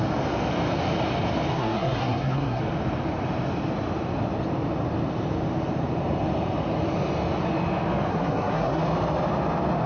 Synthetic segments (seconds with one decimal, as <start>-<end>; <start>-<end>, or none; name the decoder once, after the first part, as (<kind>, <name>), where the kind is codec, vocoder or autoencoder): 1.5-2.6 (codec, SNAC); 8.1-8.8